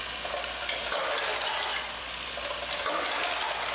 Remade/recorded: recorded